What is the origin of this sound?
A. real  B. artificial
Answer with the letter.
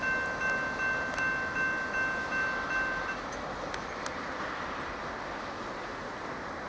A